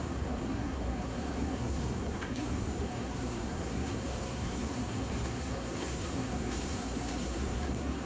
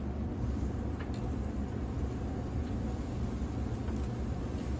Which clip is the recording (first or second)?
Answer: second